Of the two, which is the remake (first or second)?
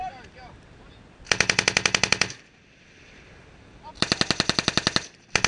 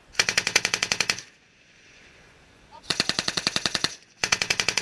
second